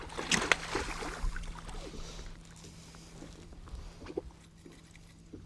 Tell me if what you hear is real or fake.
real